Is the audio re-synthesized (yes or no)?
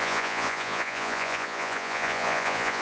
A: yes